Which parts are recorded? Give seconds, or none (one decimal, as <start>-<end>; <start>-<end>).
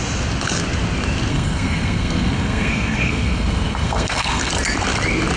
0.0-1.3; 4.5-5.4